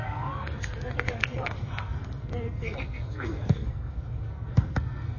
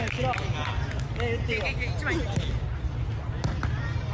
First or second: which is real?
second